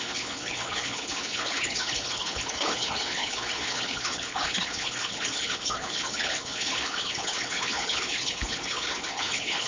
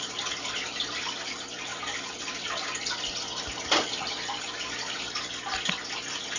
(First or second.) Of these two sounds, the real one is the second